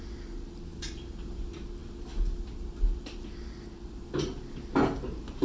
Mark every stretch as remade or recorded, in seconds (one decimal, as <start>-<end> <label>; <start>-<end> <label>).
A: 0.0-5.4 recorded